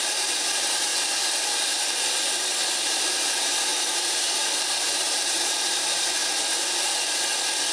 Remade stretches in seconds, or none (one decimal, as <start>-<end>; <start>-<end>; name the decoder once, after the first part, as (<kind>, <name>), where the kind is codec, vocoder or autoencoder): 0.0-6.2 (vocoder, BigVGAN v2)